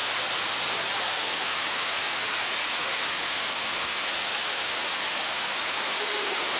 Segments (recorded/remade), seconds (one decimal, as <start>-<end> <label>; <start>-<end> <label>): 0.0-1.1 recorded; 1.1-2.2 remade; 2.2-2.8 recorded; 2.8-6.6 remade